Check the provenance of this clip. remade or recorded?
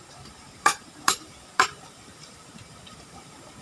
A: remade